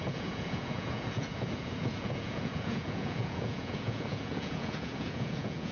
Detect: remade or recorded remade